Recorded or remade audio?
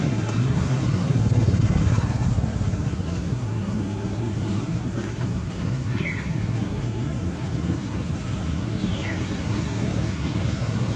remade